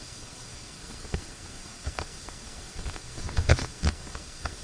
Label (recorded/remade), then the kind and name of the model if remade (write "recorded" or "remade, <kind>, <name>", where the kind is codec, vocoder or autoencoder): remade, codec, SNAC